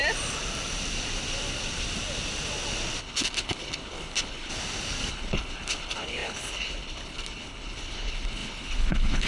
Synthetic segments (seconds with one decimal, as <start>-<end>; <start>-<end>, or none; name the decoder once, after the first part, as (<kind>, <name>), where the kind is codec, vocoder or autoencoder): 3.0-4.5 (codec, HILCodec); 5.1-9.3